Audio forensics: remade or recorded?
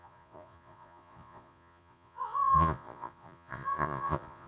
remade